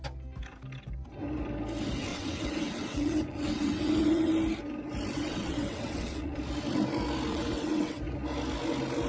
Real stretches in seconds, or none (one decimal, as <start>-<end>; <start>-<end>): 0.0-2.1; 4.3-5.1; 6.4-7.3; 8.0-9.1